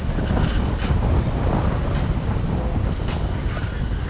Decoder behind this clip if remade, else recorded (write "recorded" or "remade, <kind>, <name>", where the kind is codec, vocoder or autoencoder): recorded